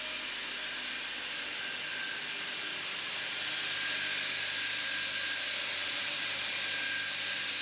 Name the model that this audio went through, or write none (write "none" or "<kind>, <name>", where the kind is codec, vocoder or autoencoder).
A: none